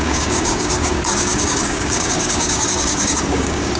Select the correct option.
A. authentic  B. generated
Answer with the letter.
B